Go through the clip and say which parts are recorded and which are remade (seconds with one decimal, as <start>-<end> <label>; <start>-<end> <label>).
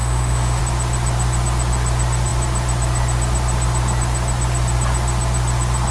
0.0-0.6 remade; 0.6-5.9 recorded